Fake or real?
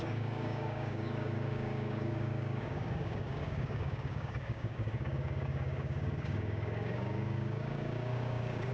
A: fake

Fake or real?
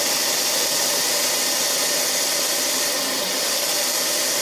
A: real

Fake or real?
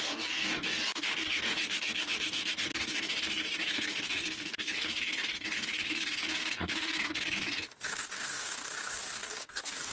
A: fake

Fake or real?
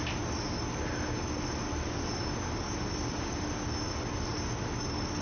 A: real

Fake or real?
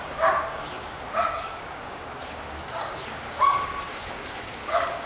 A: fake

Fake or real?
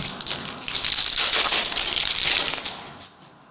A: real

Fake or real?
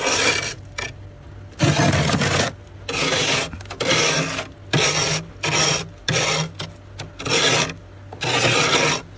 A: real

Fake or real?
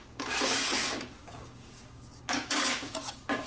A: fake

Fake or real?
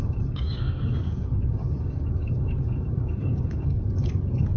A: fake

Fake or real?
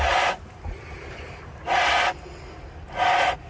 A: real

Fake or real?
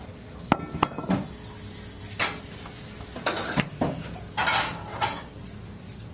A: real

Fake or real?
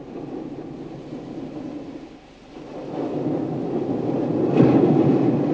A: real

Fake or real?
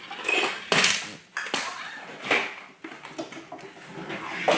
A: real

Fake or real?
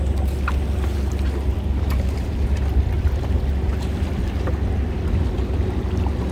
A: real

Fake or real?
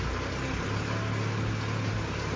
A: real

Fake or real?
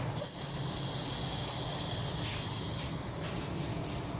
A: real